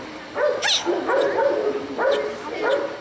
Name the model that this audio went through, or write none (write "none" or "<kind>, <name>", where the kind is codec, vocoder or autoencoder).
none